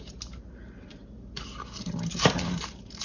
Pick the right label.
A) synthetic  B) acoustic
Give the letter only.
A